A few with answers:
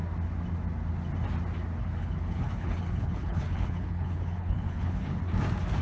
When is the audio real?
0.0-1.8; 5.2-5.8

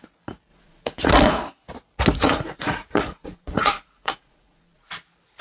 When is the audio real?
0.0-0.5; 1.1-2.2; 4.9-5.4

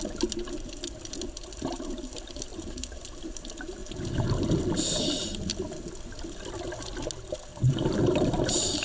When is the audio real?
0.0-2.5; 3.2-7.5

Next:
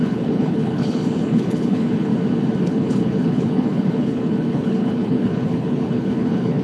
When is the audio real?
2.1-2.6

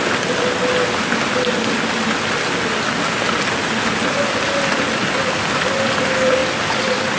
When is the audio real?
0.0-7.2